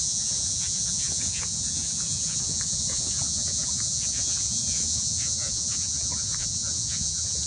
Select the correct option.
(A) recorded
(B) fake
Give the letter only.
B